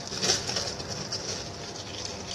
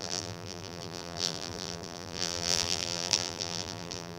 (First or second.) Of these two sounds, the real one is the first